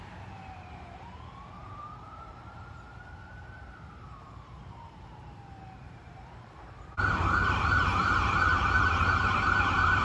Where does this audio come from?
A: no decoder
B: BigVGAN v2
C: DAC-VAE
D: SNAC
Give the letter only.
B